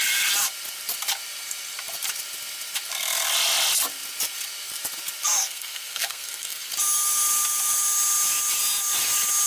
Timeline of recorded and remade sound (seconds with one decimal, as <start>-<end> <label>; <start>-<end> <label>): 0.0-5.4 recorded; 5.4-6.7 remade; 6.7-9.5 recorded